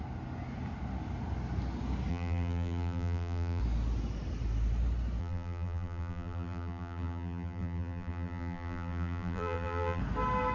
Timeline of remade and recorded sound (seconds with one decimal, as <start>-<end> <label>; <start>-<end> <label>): 0.0-2.1 recorded; 2.1-3.6 remade; 3.6-5.2 recorded; 5.2-10.0 remade; 10.0-10.5 recorded

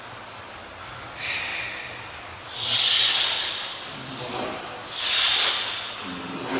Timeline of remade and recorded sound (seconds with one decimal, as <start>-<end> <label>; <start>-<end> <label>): 0.0-1.5 recorded; 1.5-5.5 remade; 5.5-6.6 recorded

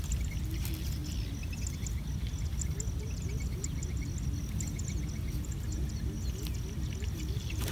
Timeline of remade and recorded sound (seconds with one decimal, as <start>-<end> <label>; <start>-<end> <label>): 0.0-7.7 recorded

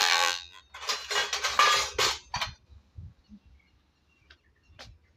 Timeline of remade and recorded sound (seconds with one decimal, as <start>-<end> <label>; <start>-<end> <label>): 0.0-0.6 remade; 0.6-5.2 recorded

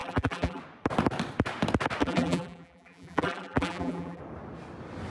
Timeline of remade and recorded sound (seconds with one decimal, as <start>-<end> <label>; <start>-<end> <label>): 0.0-0.6 remade; 0.6-2.0 recorded; 2.0-4.2 remade; 4.2-5.1 recorded

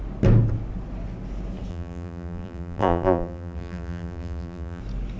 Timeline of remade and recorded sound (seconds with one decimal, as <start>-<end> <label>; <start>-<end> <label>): 0.0-1.7 recorded; 1.7-4.8 remade; 4.8-5.2 recorded

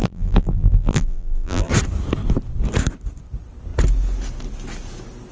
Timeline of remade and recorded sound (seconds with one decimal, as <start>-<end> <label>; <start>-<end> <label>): 0.0-1.7 remade; 1.7-5.3 recorded